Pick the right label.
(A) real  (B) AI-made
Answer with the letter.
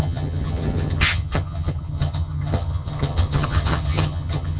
B